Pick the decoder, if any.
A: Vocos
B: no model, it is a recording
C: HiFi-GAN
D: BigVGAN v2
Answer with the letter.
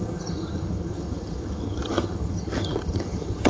C